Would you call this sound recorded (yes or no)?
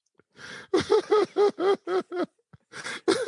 yes